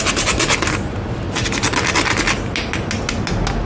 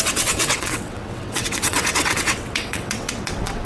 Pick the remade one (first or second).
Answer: second